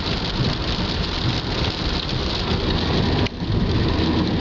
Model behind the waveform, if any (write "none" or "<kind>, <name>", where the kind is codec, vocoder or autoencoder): none